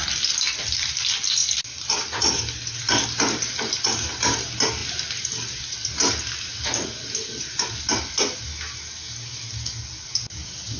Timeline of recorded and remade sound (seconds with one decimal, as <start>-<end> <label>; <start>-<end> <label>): 0.0-10.8 recorded